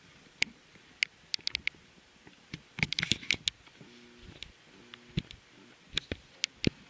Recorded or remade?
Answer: recorded